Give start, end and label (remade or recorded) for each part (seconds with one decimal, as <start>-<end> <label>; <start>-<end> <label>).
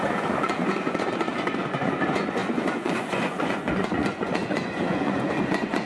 0.0-5.9 remade